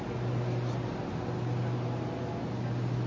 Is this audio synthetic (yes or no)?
no